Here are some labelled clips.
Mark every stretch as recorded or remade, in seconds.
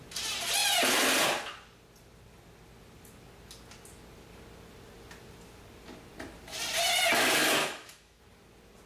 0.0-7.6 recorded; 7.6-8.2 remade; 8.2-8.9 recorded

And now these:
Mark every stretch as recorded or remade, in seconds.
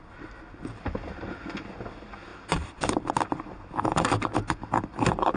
0.0-5.4 recorded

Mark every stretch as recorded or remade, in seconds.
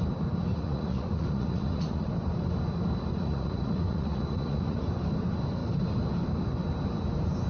0.0-0.5 recorded; 0.5-2.1 remade; 2.1-3.1 recorded; 3.1-4.8 remade; 4.8-7.5 recorded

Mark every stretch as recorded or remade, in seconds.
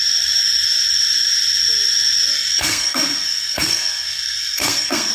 0.0-2.3 recorded; 2.3-5.1 remade